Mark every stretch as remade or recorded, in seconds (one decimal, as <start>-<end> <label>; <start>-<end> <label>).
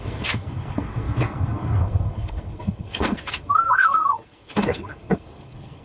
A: 0.0-5.8 remade